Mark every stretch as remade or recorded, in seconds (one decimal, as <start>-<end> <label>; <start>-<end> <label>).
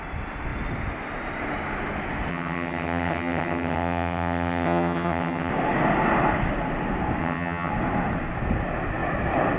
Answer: 0.0-2.3 recorded; 2.3-5.5 remade; 5.5-7.2 recorded; 7.2-7.7 remade; 7.7-9.6 recorded